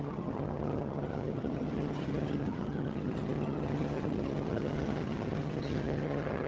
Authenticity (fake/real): fake